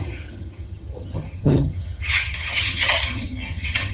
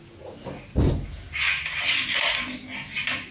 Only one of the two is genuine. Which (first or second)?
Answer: second